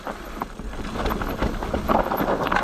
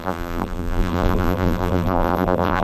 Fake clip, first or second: second